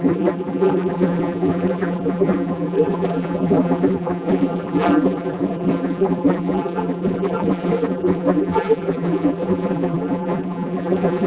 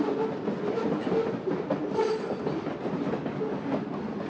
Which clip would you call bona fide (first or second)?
second